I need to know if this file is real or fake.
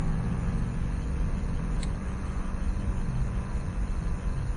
fake